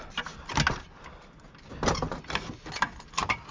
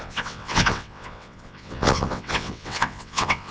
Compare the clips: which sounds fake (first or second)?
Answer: second